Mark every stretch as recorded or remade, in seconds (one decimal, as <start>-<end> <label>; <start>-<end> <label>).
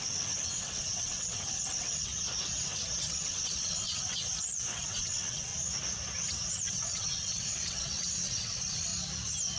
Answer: 0.0-2.1 remade; 2.1-3.0 recorded; 3.0-5.5 remade; 5.5-6.5 recorded; 6.5-8.9 remade; 8.9-9.6 recorded